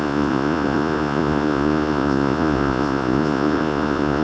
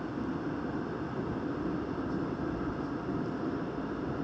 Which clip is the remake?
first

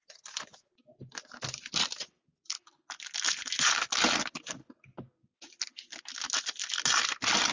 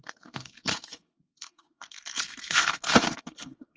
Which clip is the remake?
second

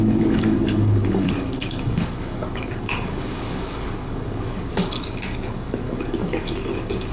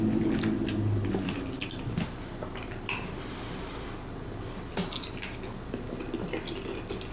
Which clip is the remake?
first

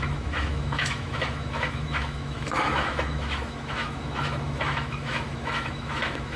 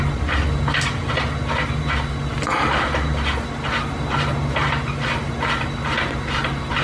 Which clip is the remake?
first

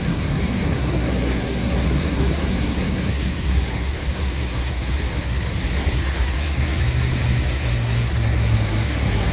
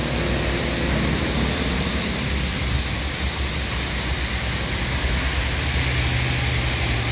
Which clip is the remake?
first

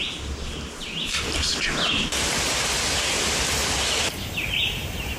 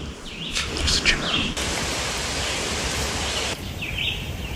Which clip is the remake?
second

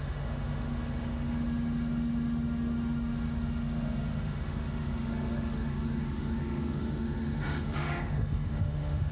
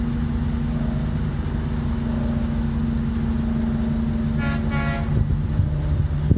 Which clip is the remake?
first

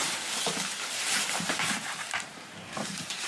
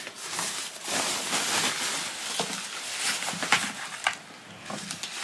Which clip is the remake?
first